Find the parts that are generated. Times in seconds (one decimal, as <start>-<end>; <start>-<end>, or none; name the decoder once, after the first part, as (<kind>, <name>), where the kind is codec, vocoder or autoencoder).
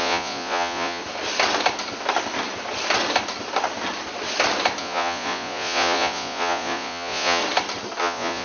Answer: 0.0-1.0 (vocoder, Vocos); 4.8-7.4; 8.0-8.4